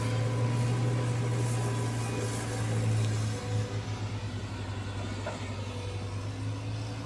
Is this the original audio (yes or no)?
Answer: yes